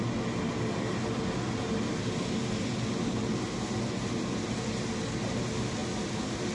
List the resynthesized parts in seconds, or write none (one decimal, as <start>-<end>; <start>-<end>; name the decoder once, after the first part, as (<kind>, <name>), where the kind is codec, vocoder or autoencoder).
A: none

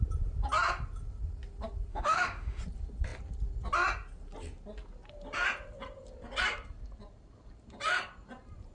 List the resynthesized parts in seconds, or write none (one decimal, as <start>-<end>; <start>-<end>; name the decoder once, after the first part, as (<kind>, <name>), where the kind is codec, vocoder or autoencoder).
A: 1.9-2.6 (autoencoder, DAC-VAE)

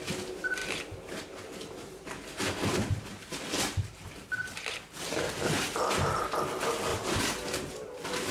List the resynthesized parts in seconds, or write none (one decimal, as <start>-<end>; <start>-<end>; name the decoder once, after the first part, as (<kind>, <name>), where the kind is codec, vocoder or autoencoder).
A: none

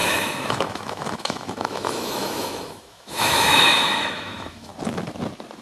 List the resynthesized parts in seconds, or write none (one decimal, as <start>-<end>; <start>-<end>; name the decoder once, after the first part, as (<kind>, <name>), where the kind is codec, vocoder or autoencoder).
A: 0.0-4.7 (autoencoder, DAC-VAE)